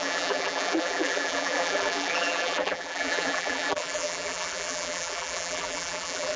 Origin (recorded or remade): remade